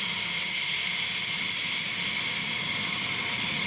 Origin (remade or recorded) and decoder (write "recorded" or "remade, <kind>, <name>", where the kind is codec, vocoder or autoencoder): recorded